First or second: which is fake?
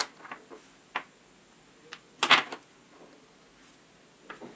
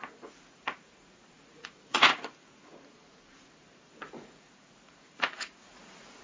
second